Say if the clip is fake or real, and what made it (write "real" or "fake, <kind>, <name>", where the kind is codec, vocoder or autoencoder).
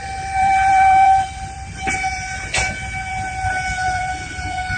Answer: fake, vocoder, BigVGAN v2